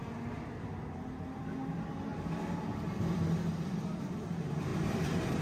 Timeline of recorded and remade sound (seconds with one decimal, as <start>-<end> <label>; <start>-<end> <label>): 0.0-4.7 recorded; 4.7-5.4 remade

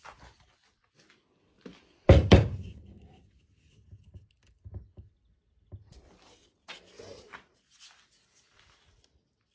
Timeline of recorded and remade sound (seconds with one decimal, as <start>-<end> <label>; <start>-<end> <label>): 0.0-9.5 recorded

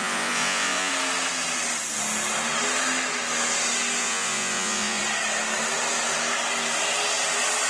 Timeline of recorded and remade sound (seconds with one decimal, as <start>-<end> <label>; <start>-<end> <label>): 0.0-0.9 remade; 0.9-4.0 recorded; 4.0-5.0 remade; 5.0-7.7 recorded

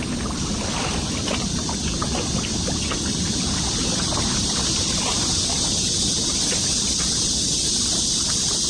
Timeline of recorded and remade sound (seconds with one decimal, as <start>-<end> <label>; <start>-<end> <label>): 0.0-8.7 recorded

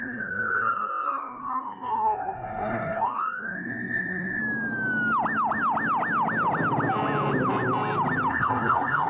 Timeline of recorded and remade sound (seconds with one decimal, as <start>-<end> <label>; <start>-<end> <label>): 0.0-4.4 remade; 4.4-8.3 recorded; 8.3-9.1 remade

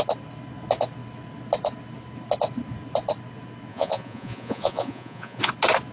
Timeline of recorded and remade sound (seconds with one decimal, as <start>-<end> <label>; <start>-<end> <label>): 0.0-3.7 recorded; 3.7-5.5 remade; 5.5-5.9 recorded